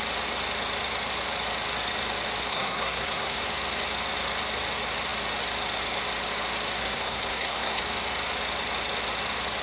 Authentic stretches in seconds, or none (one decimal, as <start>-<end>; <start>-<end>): 0.0-2.5; 3.4-6.8; 7.8-9.6